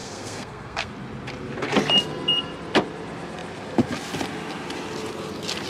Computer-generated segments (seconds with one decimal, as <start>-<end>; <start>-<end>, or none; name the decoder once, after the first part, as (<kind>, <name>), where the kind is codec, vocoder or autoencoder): 0.0-0.9 (codec, SNAC)